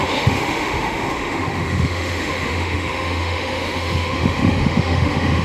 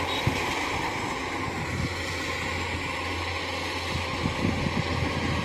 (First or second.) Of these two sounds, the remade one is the first